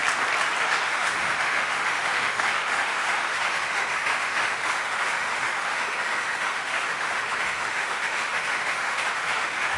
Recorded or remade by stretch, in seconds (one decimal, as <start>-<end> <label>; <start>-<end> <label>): 0.0-0.6 recorded; 0.6-9.8 remade